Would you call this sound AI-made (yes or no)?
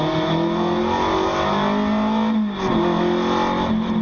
no